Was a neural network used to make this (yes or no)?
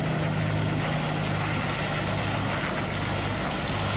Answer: no